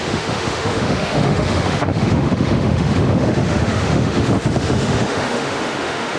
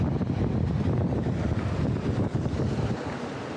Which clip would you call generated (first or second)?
first